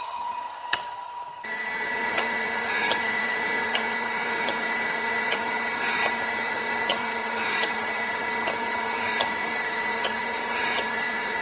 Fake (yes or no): yes